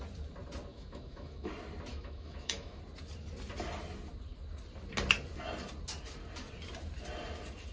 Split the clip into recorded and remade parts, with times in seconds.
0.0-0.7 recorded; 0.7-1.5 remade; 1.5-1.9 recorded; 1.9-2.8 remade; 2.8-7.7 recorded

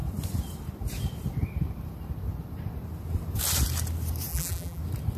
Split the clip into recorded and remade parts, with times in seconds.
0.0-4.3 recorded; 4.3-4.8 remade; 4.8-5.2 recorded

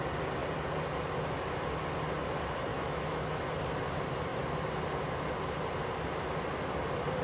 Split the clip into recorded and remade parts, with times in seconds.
0.0-2.7 recorded; 2.7-3.3 remade; 3.3-7.2 recorded

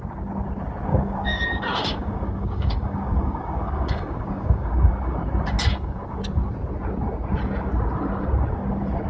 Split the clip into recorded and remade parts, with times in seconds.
0.0-0.9 recorded; 0.9-4.9 remade; 4.9-9.1 recorded